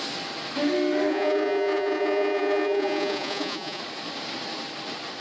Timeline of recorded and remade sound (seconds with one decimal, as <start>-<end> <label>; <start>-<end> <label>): 0.0-1.1 recorded; 1.1-3.8 remade; 3.8-5.2 recorded